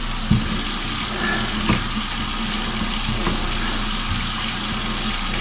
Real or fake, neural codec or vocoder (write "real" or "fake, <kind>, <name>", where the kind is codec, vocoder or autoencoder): real